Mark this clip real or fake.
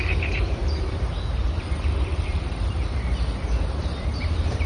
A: fake